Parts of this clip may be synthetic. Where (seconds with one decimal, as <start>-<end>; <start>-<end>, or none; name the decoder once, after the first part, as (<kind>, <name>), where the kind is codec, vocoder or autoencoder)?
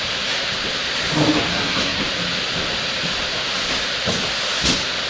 1.5-2.0 (codec, SNAC)